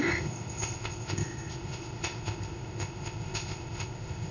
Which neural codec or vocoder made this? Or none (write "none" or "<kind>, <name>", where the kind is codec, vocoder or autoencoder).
codec, ZipCodec